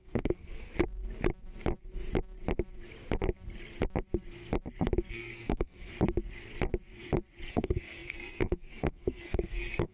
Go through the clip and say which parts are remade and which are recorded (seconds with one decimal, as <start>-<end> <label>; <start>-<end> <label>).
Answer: 0.0-0.7 remade; 0.7-5.1 recorded; 5.1-5.9 remade; 5.9-7.5 recorded; 7.5-9.9 remade